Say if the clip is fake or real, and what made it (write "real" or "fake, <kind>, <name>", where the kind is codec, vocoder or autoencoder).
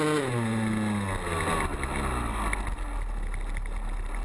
real